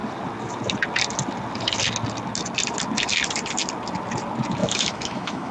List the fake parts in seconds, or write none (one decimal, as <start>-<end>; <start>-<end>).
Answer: 4.6-5.5